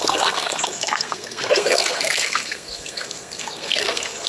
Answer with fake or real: fake